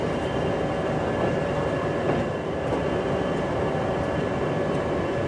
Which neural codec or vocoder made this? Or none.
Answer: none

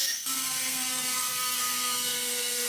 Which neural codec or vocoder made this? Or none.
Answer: codec, SNAC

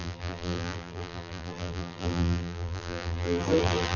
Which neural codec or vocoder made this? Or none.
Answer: vocoder, BigVGAN v2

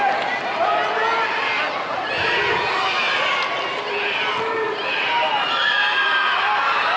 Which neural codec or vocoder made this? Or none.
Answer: none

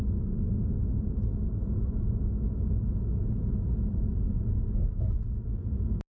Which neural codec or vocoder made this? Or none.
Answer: none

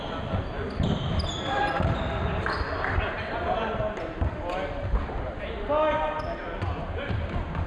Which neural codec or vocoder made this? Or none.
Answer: none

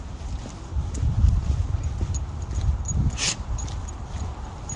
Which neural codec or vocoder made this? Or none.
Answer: none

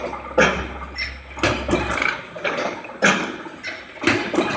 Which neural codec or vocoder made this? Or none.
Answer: none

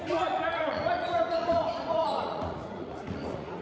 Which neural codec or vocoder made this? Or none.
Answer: vocoder, Vocos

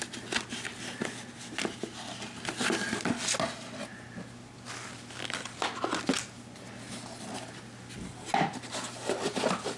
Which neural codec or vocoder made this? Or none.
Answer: none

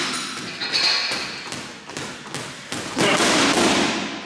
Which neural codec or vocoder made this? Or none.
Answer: none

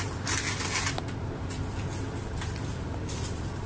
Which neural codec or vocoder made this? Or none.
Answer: none